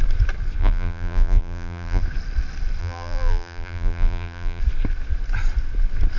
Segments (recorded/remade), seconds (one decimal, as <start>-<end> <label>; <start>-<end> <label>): 0.0-0.6 recorded; 0.6-2.0 remade; 2.0-2.8 recorded; 2.8-4.6 remade; 4.6-6.2 recorded